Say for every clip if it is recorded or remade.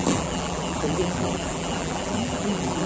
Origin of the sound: remade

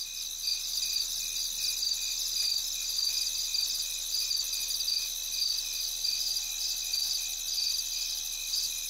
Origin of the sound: recorded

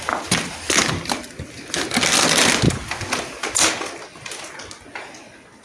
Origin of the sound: recorded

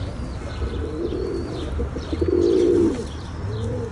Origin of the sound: remade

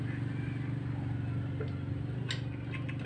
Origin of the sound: recorded